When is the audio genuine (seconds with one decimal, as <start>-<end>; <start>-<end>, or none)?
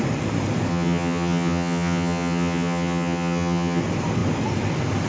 0.0-0.7; 3.8-5.1